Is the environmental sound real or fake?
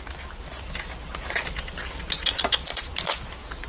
real